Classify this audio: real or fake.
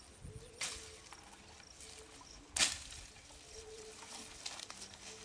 real